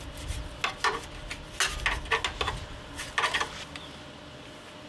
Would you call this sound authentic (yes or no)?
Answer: yes